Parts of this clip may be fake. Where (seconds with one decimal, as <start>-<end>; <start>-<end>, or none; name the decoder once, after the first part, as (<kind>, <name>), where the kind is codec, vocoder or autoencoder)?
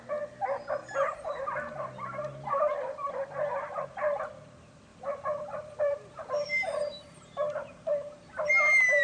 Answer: 0.8-3.1 (vocoder, BigVGAN v2); 4.9-8.5